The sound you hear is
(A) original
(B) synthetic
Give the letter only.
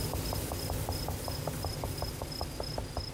A